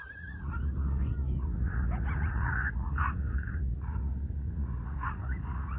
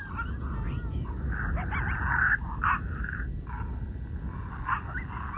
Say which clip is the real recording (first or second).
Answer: second